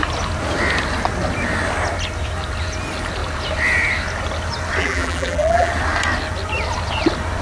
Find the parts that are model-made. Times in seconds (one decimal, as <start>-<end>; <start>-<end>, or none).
4.8-5.7